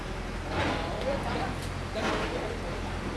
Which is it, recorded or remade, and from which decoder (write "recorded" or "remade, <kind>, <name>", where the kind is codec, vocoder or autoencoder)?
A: recorded